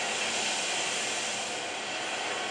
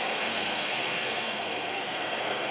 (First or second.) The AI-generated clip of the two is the second